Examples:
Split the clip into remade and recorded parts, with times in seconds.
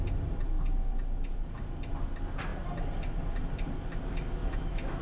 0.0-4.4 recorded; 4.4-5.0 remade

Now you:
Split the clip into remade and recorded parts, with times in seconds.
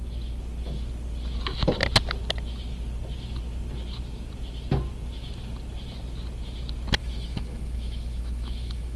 0.0-7.0 recorded; 7.0-9.0 remade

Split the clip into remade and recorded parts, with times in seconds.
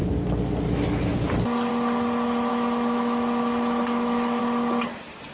0.0-2.5 recorded; 2.5-4.4 remade; 4.4-5.3 recorded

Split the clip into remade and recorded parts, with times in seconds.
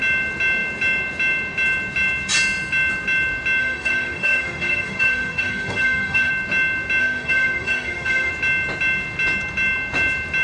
0.0-3.6 recorded; 3.6-6.3 remade; 6.3-7.0 recorded; 7.0-8.3 remade; 8.3-10.4 recorded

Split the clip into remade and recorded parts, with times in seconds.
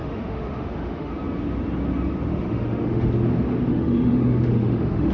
0.0-1.1 remade; 1.1-2.3 recorded; 2.3-3.1 remade; 3.1-3.7 recorded; 3.7-5.1 remade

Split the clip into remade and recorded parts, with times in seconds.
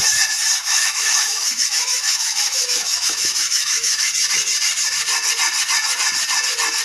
0.0-0.6 recorded; 0.6-4.1 remade; 4.1-6.8 recorded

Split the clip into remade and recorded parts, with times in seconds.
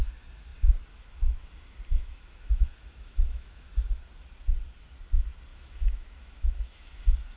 0.0-1.9 recorded; 1.9-3.7 remade; 3.7-5.5 recorded; 5.5-7.0 remade; 7.0-7.4 recorded